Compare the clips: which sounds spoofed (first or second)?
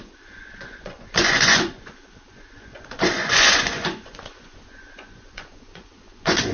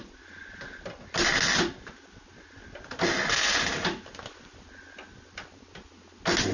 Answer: first